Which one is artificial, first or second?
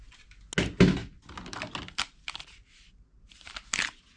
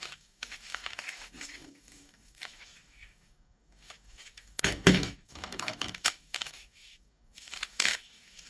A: second